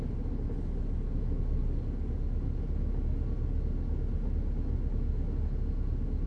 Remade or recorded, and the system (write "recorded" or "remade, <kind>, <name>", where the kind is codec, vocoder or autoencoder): recorded